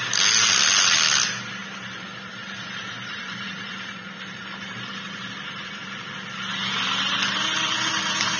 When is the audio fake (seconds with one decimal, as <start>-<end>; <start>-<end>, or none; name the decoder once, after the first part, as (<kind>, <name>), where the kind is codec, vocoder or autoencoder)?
1.6-6.1 (vocoder, BigVGAN v2)